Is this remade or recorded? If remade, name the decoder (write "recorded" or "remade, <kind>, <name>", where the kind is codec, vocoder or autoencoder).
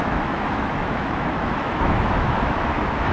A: remade, autoencoder, DAC-VAE